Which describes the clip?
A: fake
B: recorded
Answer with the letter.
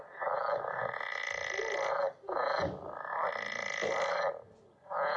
B